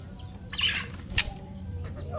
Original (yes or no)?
no